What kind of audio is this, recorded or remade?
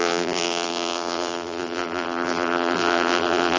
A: remade